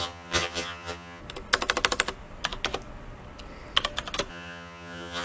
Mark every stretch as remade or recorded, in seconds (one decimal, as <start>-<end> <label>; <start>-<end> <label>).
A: 0.0-1.2 remade; 1.2-4.3 recorded; 4.3-5.2 remade